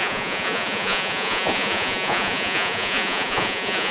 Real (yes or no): no